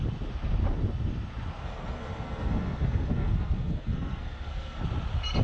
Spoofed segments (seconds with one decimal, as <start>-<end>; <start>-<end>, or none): 1.6-4.8